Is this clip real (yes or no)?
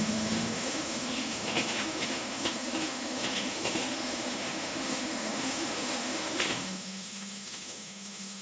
no